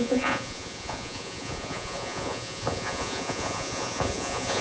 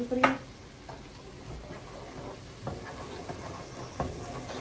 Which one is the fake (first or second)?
first